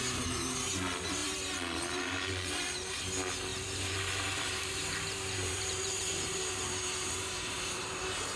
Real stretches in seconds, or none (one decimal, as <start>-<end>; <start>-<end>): 0.0-3.5; 8.0-8.4

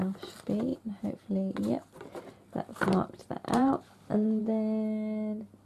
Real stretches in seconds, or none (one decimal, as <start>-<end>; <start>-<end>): 0.0-0.7; 2.0-2.7; 4.4-5.7

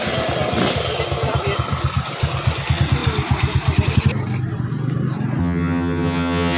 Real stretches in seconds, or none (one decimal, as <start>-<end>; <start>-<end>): 0.0-5.4

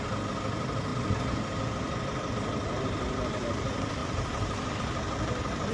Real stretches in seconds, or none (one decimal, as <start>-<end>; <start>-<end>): 0.0-4.0; 4.7-5.7

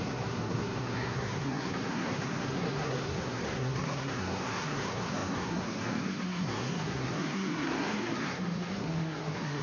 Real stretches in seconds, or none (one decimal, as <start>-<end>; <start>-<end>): none